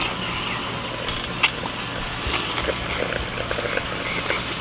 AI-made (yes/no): no